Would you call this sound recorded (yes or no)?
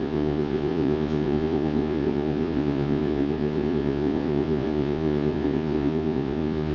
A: no